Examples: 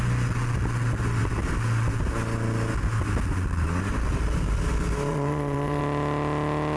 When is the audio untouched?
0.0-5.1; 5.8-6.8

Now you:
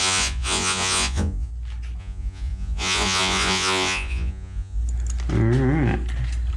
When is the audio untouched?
1.5-2.0; 4.8-6.6

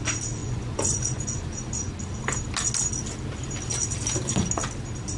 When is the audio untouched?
0.0-0.4; 1.9-5.2

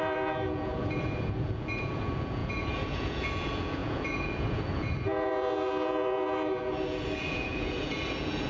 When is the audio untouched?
none

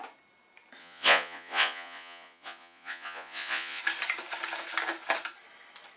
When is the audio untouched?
0.0-0.8; 3.8-6.0